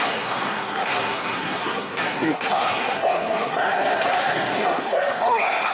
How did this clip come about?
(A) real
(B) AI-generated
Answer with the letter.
B